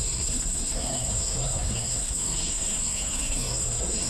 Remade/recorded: remade